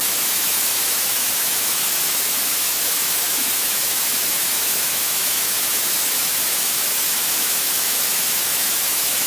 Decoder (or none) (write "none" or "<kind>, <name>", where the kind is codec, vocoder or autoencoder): autoencoder, DAC-VAE